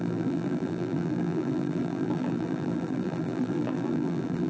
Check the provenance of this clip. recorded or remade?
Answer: remade